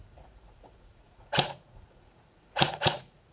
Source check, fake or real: fake